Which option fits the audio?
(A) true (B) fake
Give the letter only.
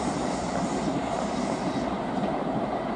A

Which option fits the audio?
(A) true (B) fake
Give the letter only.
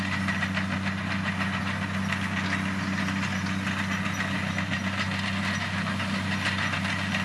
A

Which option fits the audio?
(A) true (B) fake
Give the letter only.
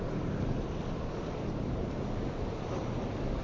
B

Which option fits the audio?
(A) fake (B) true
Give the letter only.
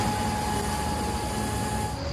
B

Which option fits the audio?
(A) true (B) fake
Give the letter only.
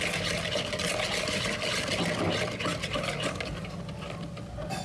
A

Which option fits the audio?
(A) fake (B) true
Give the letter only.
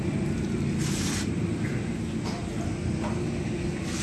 B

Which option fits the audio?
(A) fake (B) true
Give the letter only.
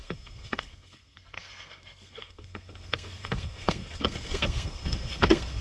A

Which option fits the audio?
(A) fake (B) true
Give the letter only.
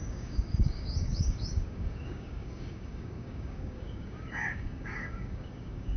A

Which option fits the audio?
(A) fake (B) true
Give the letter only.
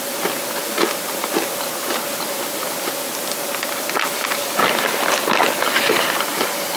B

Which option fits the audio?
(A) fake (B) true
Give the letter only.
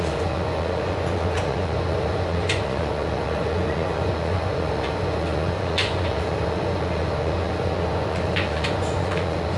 A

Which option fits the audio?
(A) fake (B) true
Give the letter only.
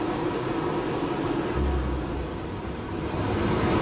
B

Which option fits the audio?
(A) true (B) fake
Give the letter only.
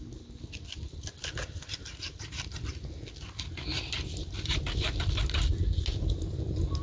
A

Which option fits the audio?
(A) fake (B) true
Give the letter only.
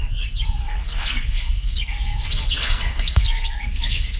A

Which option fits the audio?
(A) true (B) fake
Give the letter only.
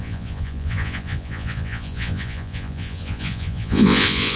B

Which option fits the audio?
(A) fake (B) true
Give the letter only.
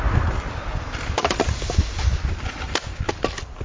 B